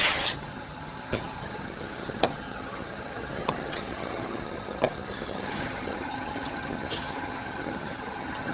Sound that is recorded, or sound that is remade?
remade